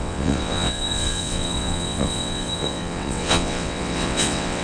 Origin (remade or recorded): remade